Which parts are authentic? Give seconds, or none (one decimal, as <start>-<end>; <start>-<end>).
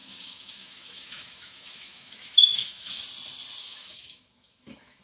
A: 3.0-3.6